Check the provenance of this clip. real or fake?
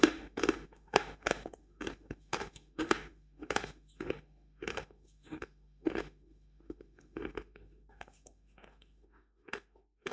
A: fake